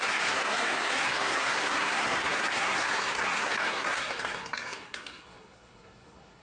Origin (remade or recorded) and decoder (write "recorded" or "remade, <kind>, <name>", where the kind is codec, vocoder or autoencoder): remade, codec, SNAC